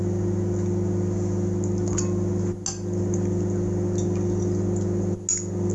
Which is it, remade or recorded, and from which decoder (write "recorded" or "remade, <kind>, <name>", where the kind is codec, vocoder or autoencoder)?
recorded